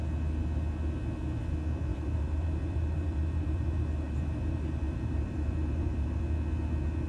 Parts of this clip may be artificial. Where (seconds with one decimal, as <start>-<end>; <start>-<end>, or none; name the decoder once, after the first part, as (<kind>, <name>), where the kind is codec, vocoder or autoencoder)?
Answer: 1.9-6.2 (vocoder, BigVGAN v2)